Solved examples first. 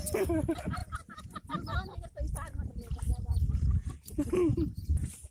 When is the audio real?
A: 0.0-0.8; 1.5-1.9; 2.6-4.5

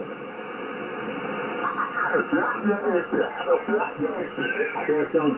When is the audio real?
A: 0.0-5.4

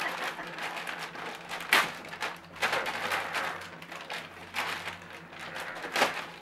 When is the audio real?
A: 1.1-2.4; 3.4-4.4; 5.0-6.4

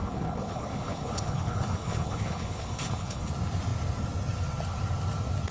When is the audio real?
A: 3.3-5.5